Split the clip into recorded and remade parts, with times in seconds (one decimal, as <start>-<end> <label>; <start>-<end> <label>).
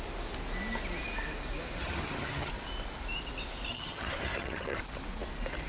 0.0-1.8 recorded; 1.8-2.5 remade; 2.5-3.7 recorded; 3.7-4.8 remade; 4.8-5.7 recorded